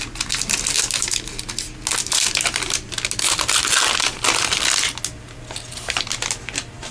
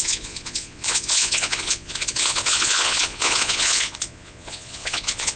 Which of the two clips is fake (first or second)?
second